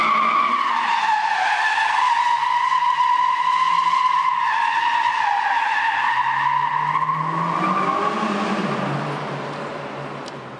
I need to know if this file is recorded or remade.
recorded